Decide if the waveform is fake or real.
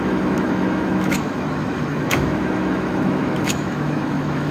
fake